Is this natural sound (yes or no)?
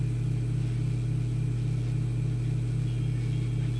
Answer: yes